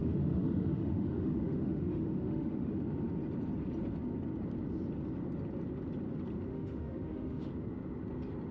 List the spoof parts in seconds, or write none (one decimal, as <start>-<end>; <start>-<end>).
0.0-2.7; 6.5-7.5